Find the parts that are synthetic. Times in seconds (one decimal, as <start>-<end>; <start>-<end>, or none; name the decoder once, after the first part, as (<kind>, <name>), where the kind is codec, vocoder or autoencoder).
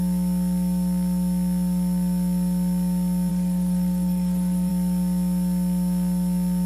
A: 3.3-4.7 (codec, DAC)